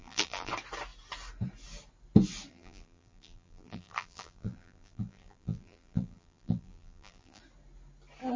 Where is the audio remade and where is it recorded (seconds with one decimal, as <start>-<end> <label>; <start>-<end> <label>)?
0.0-0.5 remade; 0.5-2.5 recorded; 2.5-7.4 remade; 7.4-8.4 recorded